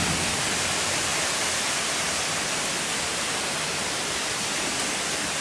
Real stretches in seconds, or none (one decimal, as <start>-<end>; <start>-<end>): 0.0-5.4